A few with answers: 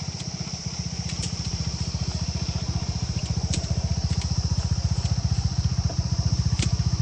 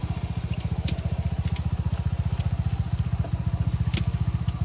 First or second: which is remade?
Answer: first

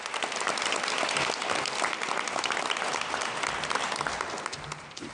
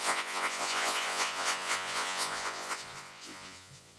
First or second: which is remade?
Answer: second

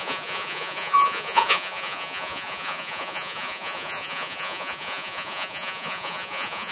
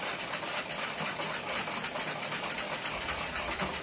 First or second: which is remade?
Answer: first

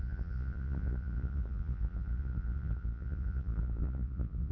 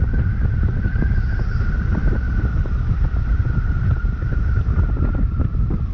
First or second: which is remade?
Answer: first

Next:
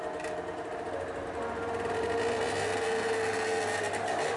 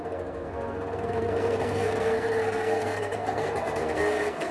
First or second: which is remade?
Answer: second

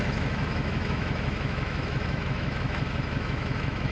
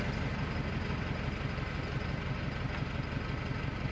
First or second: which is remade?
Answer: first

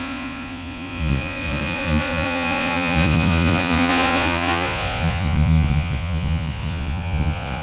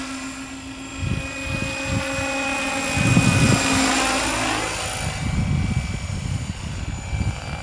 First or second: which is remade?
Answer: first